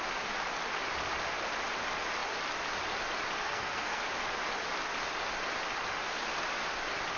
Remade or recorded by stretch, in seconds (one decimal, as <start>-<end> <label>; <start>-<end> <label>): 0.0-3.4 recorded; 3.4-4.0 remade; 4.0-7.2 recorded